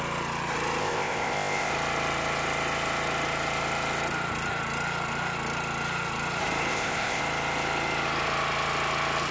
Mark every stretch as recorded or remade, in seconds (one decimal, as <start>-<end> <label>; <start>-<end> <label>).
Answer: 0.0-0.8 recorded; 0.8-1.7 remade; 1.7-6.7 recorded; 6.7-7.2 remade; 7.2-9.3 recorded